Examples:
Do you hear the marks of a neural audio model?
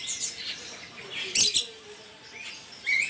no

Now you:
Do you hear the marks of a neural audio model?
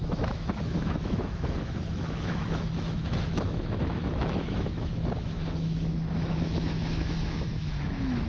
yes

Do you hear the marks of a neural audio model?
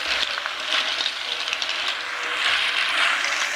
no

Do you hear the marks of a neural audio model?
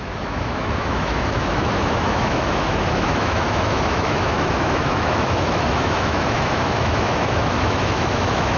yes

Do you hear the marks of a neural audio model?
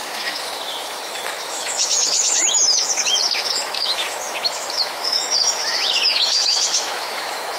yes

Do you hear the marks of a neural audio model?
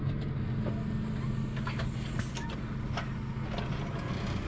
no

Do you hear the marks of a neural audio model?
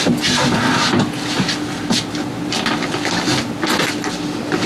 no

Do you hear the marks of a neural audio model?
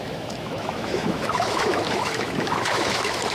yes